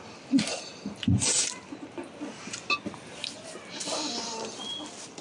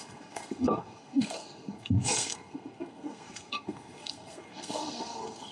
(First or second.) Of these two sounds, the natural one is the first